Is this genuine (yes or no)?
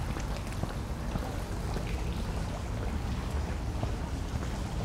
yes